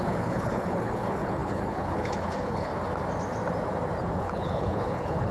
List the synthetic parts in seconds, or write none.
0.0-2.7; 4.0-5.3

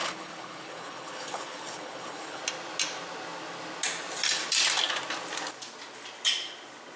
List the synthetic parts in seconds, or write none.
0.0-2.4

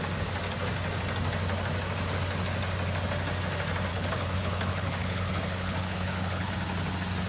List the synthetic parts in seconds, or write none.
3.9-6.5

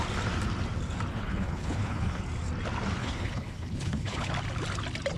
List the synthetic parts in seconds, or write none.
1.1-2.2; 3.0-4.3